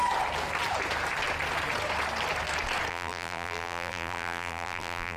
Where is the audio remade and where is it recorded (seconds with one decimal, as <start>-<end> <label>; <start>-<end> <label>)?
0.0-2.9 recorded; 2.9-5.2 remade